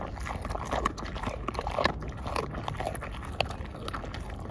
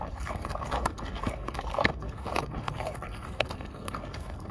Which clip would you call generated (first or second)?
second